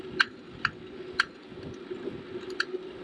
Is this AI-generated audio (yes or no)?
no